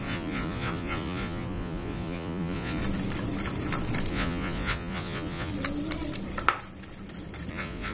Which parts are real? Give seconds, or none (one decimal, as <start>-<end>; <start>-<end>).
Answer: 2.8-4.1; 5.5-7.5